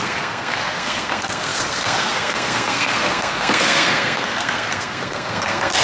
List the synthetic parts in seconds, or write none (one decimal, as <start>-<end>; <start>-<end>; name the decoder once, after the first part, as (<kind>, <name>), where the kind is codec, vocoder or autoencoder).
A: 0.0-5.8 (codec, SNAC)